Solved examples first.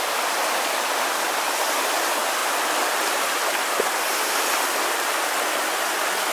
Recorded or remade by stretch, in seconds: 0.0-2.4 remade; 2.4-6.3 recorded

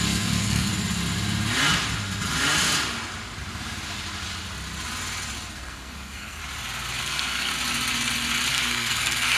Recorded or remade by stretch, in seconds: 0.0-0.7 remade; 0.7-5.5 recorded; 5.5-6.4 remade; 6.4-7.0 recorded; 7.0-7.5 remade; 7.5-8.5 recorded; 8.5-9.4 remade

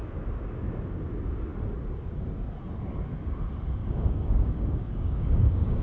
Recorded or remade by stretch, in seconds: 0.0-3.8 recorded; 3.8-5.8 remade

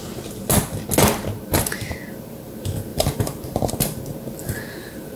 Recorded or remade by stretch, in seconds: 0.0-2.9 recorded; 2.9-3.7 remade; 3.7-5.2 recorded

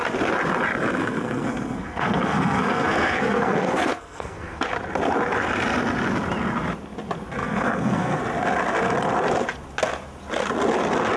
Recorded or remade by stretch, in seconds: 0.0-1.0 recorded; 1.0-4.6 remade; 4.6-7.4 recorded; 7.4-8.2 remade; 8.2-11.2 recorded

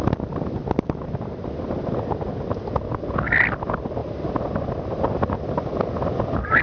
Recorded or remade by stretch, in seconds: 0.0-6.6 recorded

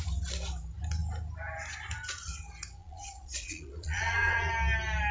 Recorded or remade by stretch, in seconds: 0.0-2.8 recorded; 2.8-4.5 remade; 4.5-5.1 recorded